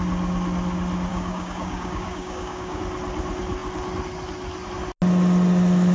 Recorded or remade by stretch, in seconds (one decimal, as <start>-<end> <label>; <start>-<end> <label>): 0.0-1.1 recorded; 1.1-2.8 remade; 2.8-5.9 recorded